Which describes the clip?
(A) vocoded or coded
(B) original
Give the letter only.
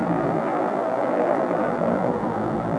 A